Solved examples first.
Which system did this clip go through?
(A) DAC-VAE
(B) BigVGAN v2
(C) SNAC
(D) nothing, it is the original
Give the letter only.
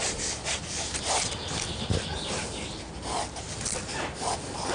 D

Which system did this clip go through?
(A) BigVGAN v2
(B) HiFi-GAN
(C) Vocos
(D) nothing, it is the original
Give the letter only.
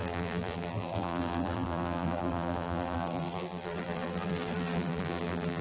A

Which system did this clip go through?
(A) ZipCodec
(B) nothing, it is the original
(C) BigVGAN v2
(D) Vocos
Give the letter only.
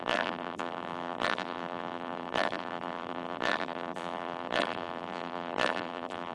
C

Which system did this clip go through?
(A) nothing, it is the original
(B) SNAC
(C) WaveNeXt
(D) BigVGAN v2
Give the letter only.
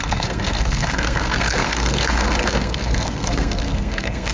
B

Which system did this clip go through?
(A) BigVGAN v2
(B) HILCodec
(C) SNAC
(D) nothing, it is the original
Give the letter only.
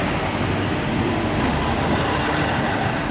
D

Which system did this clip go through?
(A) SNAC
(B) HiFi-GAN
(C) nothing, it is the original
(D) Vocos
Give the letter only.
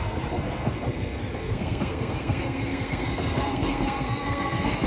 A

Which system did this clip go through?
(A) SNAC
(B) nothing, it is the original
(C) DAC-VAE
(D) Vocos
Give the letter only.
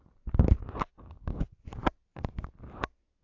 B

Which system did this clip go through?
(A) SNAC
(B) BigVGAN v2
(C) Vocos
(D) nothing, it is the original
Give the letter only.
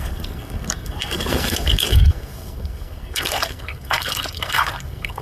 A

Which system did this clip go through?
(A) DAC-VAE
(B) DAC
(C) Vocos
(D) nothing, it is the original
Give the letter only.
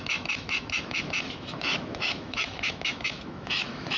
A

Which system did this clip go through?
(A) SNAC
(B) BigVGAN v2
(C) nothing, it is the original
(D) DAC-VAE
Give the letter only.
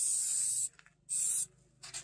C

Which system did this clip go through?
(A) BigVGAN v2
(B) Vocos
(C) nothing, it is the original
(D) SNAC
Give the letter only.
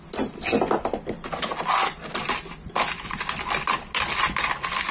C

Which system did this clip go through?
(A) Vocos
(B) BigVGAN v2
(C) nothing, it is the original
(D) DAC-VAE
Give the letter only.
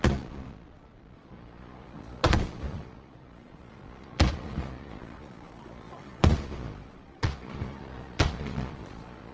A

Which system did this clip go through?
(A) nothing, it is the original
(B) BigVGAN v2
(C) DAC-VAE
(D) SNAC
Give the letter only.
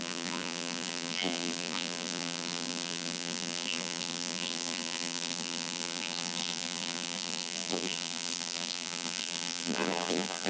B